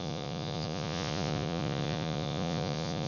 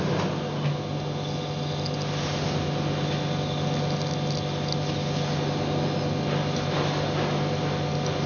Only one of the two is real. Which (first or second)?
second